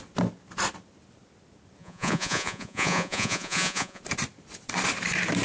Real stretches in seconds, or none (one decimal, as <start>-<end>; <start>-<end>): 0.0-1.8; 4.0-5.4